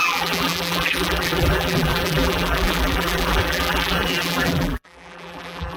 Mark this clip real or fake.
fake